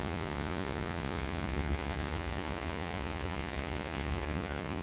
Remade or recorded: remade